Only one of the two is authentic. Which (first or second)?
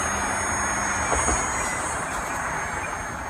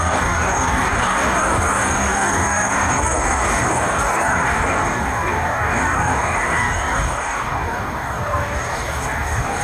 first